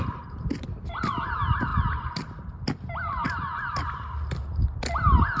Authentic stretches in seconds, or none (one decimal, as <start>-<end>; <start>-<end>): 0.0-5.4

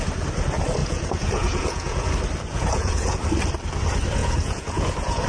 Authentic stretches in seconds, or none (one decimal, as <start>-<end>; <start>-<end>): 0.0-0.8; 2.1-2.5; 3.2-4.2

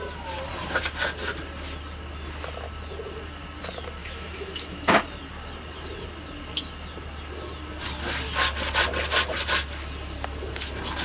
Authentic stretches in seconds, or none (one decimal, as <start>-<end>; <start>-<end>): 0.0-4.0; 5.0-11.0

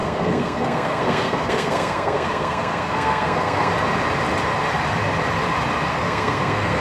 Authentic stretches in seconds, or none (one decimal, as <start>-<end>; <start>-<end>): 3.7-5.9